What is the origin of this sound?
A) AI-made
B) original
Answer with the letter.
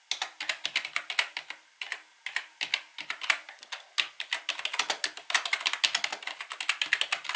B